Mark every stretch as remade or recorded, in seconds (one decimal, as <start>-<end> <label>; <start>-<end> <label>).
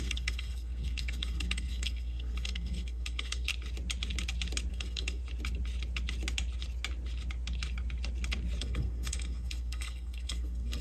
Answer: 0.0-3.5 remade; 3.5-4.7 recorded; 4.7-5.2 remade; 5.2-8.6 recorded; 8.6-10.8 remade